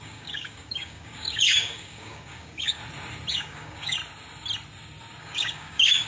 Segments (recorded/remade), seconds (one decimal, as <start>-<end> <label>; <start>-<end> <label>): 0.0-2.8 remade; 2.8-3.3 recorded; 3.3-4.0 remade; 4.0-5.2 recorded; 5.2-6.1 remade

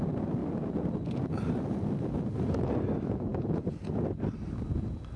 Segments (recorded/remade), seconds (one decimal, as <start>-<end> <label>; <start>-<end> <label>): 0.0-3.3 recorded; 3.3-4.2 remade; 4.2-5.2 recorded

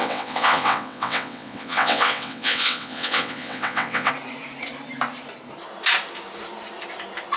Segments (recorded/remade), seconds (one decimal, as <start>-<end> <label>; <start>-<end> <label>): 0.0-4.1 remade; 4.1-7.4 recorded

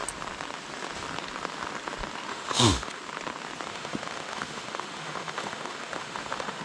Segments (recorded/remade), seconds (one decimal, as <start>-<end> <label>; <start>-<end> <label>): 0.0-2.3 recorded; 2.3-3.0 remade; 3.0-3.7 recorded; 3.7-6.6 remade

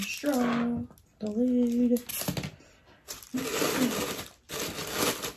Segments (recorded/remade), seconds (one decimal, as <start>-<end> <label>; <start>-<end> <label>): 0.0-2.5 recorded; 2.5-3.3 remade; 3.3-5.0 recorded; 5.0-5.4 remade